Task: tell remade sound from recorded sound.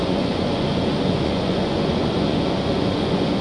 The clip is remade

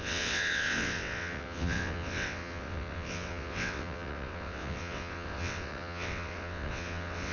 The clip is remade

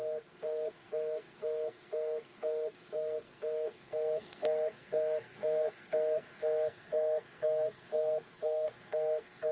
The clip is remade